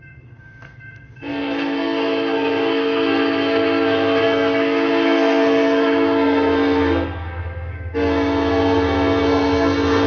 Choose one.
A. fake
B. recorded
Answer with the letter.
A